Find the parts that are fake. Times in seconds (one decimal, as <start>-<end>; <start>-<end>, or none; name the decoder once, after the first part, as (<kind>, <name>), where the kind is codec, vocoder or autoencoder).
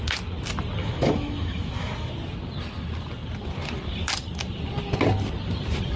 0.8-2.1 (autoencoder, DAC-VAE)